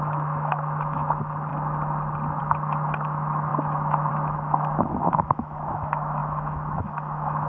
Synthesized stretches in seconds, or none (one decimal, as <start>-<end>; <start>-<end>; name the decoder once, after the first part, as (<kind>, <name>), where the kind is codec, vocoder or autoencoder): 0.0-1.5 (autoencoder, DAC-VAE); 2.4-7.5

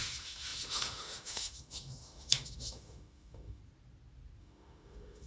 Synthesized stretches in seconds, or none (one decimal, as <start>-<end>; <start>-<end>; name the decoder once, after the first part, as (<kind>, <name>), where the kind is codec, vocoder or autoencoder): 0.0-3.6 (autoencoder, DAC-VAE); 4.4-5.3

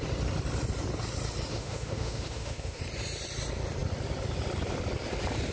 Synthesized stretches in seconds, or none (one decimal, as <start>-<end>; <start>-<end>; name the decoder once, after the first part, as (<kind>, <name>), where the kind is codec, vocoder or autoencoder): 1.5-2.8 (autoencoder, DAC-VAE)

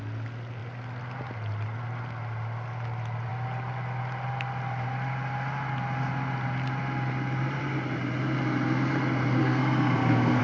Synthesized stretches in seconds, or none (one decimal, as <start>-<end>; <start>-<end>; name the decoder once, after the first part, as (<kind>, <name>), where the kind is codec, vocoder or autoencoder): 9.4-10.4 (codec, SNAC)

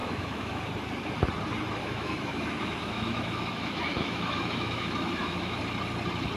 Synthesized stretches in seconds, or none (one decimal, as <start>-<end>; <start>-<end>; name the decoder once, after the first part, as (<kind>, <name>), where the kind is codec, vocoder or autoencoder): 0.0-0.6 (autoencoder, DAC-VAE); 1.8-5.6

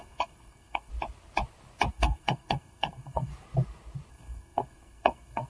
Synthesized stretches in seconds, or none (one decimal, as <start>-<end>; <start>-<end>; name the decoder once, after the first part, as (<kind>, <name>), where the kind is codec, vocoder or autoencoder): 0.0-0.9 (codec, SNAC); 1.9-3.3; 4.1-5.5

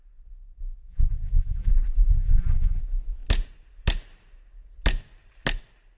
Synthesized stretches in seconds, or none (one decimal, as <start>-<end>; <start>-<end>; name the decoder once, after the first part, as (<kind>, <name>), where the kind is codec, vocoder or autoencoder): 0.9-1.7 (vocoder, BigVGAN v2); 2.1-2.8